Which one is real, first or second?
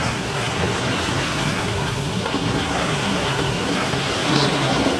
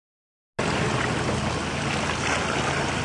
second